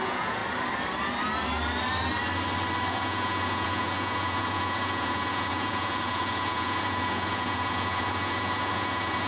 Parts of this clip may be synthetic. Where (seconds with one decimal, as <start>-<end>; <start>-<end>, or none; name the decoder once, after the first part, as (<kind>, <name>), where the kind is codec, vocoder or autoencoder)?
0.0-0.4 (vocoder, Vocos); 2.9-9.3

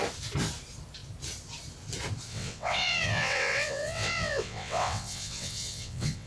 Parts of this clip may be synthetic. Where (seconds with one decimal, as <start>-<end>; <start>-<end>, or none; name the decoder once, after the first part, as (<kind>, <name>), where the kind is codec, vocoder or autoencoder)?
2.3-6.3 (vocoder, WaveNeXt)

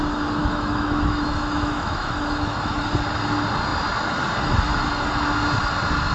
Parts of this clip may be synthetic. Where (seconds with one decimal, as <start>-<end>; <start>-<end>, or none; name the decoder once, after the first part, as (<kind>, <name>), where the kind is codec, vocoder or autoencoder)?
0.4-2.8 (autoencoder, DAC-VAE)

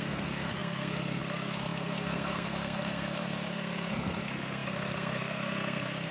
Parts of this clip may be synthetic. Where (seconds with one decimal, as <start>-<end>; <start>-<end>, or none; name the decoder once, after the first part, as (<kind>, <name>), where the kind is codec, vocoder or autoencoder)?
0.0-6.1 (codec, SNAC)

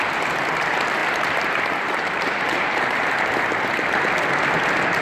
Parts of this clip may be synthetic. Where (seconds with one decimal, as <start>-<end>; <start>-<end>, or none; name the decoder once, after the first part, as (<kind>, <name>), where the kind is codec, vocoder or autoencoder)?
1.0-3.1 (vocoder, BigVGAN v2)

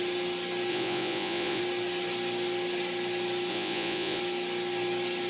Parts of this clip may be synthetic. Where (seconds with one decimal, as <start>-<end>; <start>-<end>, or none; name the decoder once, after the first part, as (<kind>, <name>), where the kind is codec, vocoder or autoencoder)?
0.7-1.6 (vocoder, Vocos); 3.5-4.2

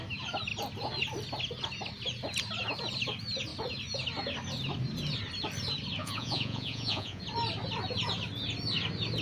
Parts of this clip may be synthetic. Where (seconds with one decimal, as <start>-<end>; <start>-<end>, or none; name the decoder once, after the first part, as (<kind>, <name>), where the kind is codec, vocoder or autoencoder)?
6.0-7.2 (vocoder, Vocos)

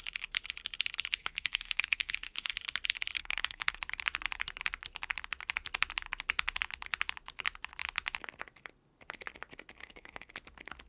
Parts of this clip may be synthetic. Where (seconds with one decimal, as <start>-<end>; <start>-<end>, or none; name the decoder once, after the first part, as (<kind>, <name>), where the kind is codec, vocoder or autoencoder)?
1.2-2.5 (codec, SNAC); 3.2-3.8; 9.8-10.3